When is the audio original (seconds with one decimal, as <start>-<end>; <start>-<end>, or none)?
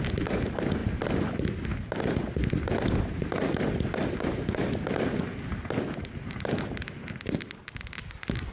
0.0-8.5